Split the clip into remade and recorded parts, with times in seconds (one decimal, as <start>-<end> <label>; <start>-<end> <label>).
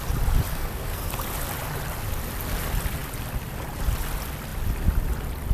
0.0-0.5 recorded; 0.5-1.1 remade; 1.1-5.5 recorded